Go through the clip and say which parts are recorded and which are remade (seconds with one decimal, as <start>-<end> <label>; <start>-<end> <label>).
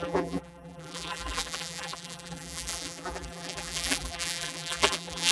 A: 0.0-5.3 remade